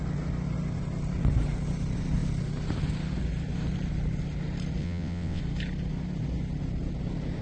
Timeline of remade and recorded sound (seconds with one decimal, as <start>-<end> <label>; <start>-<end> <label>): 0.0-4.8 recorded; 4.8-5.4 remade; 5.4-7.4 recorded